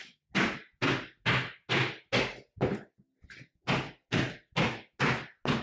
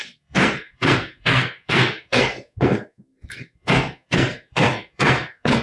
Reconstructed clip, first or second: second